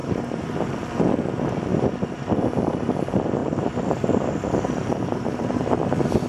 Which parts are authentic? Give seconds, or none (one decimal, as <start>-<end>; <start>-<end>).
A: 0.6-1.7; 3.0-3.4; 5.7-6.3